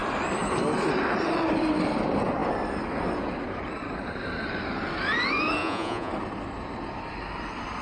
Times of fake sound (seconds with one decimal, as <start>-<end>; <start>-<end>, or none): 5.6-6.1